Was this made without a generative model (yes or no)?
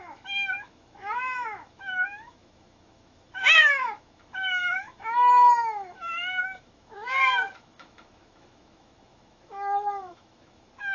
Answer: no